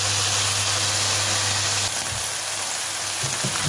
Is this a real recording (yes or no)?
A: yes